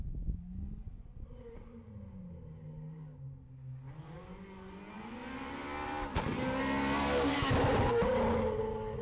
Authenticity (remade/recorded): recorded